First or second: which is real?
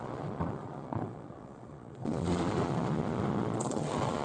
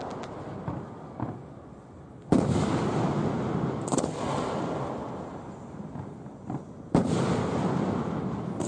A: second